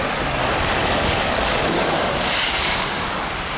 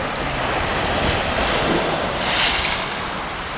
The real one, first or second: second